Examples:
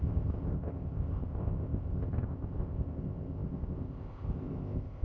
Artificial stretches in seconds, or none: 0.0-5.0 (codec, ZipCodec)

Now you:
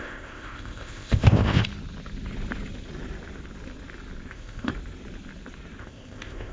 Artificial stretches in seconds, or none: 0.0-1.6 (codec, ZipCodec); 4.3-4.7; 5.8-6.5